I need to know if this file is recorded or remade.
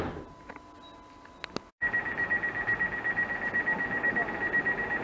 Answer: recorded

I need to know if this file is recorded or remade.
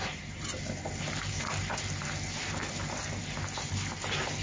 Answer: recorded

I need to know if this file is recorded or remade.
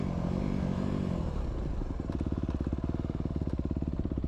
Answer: recorded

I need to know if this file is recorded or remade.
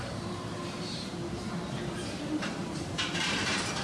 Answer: remade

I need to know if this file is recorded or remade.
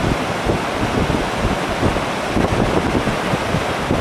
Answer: recorded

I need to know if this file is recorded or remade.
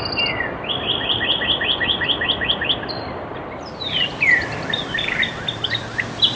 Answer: remade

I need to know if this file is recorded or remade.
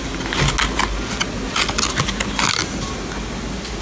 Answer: recorded